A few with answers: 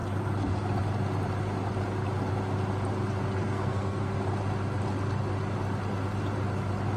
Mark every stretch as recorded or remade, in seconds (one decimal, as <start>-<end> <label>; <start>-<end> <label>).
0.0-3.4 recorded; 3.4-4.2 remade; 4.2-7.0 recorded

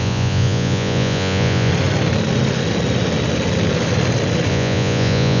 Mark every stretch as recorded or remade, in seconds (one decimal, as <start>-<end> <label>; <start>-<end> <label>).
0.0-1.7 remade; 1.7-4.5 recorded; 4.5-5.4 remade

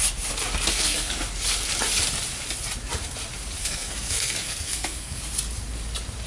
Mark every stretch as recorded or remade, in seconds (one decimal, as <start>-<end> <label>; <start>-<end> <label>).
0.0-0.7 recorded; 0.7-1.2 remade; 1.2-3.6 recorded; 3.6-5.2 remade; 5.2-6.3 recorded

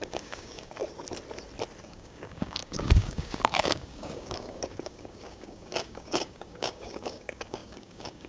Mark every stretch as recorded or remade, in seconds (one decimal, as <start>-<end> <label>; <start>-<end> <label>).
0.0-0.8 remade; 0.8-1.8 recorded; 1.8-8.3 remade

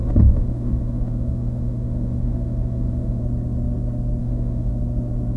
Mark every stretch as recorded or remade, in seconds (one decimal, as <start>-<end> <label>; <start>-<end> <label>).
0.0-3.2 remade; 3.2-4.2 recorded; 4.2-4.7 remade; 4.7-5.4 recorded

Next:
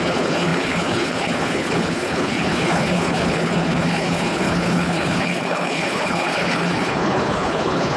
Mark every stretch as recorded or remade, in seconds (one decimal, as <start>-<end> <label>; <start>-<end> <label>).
0.0-8.0 remade